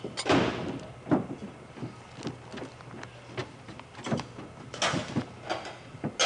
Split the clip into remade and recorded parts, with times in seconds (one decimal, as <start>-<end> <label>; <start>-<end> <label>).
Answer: 0.0-3.4 recorded; 3.4-4.1 remade; 4.1-6.3 recorded